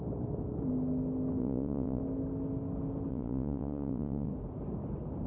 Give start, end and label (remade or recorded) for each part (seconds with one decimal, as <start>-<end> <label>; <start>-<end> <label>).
0.0-1.4 recorded; 1.4-2.0 remade; 2.0-3.1 recorded; 3.1-4.3 remade; 4.3-5.3 recorded